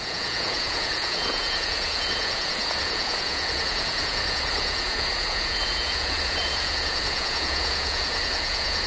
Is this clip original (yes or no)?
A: no